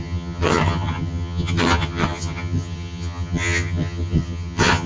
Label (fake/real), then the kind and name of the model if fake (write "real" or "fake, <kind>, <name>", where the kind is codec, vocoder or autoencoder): fake, vocoder, HiFi-GAN